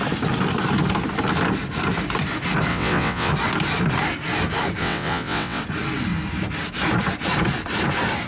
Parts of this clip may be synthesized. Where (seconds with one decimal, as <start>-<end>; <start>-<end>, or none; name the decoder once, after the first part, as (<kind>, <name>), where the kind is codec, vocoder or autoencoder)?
2.7-3.3 (vocoder, WaveNeXt); 4.8-5.6